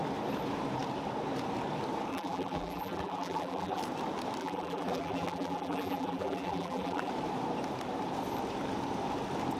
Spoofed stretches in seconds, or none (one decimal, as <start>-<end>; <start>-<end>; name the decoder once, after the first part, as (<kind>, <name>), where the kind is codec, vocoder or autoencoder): 2.1-3.8 (vocoder, BigVGAN v2); 4.4-7.1

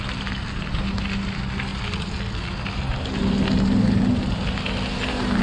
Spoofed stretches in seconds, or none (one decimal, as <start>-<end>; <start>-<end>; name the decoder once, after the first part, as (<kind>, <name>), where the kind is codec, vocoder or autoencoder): none

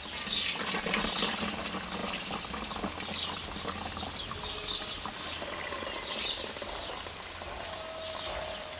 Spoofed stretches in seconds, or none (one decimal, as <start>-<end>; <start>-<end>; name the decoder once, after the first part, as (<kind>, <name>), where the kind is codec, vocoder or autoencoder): none

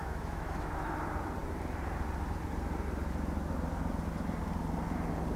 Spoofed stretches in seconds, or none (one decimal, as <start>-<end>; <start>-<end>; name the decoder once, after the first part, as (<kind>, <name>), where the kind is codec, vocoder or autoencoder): 0.0-0.9 (autoencoder, DAC-VAE)

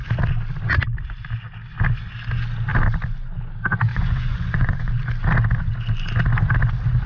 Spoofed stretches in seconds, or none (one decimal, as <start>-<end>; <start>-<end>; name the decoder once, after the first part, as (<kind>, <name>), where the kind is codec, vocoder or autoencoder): 3.9-4.9 (vocoder, Vocos)

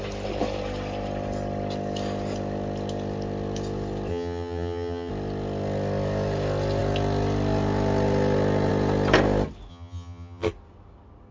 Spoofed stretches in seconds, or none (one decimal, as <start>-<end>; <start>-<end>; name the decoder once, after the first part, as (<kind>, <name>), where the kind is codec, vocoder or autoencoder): 4.1-5.1 (vocoder, HiFi-GAN); 9.7-10.5

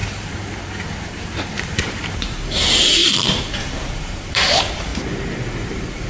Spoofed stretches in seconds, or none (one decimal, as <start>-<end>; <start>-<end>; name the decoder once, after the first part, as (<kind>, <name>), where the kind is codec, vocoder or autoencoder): 0.0-3.0 (vocoder, BigVGAN v2); 3.5-4.9

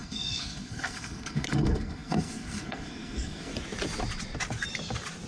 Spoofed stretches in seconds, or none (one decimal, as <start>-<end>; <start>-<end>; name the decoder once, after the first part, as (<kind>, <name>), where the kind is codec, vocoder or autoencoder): 0.0-3.5 (codec, SNAC)